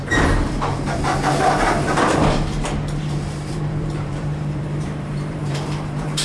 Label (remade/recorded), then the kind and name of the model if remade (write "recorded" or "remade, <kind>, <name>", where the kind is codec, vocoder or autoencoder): remade, vocoder, BigVGAN v2